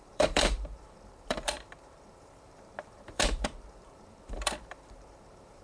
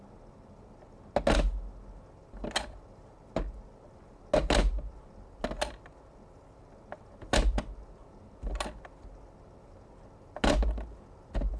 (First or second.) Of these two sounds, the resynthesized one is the first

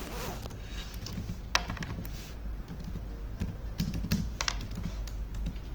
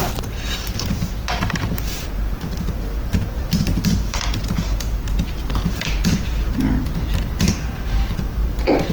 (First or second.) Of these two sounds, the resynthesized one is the second